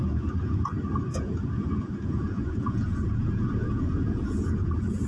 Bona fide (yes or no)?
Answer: no